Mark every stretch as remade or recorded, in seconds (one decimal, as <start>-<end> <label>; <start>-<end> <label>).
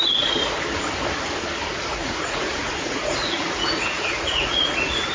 0.0-1.9 recorded; 1.9-5.1 remade